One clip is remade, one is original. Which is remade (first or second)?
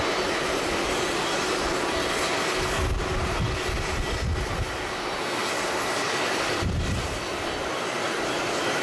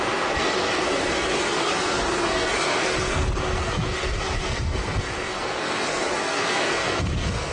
second